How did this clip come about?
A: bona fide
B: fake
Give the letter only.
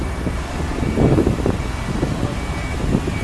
A